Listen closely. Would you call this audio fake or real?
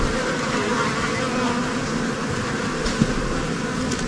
real